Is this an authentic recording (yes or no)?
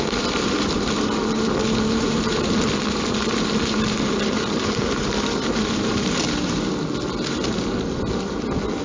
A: yes